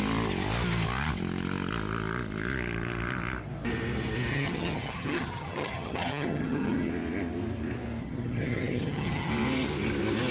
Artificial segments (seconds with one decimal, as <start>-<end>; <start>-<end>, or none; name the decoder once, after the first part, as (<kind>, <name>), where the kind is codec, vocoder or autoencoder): 4.3-6.9 (vocoder, HiFi-GAN); 8.0-9.3